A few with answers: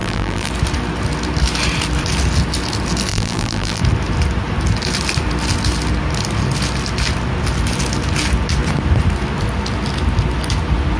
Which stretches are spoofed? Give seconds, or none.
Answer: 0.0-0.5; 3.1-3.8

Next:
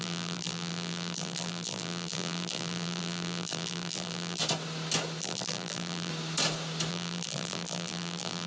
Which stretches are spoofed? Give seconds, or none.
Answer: 0.0-4.4; 5.2-6.1; 6.9-8.5

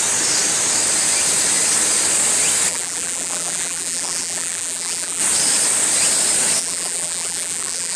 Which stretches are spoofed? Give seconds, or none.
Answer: 2.7-5.2; 6.6-8.0

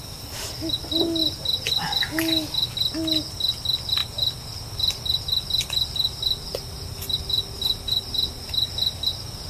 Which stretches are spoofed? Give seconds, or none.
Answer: none

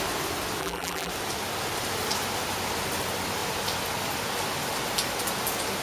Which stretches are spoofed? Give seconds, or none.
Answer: 0.6-1.1

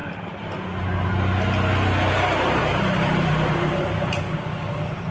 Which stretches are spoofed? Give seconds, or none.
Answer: 0.0-1.1; 2.6-4.1

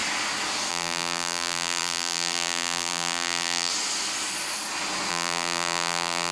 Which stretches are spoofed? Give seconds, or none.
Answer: 0.7-3.7; 5.1-6.3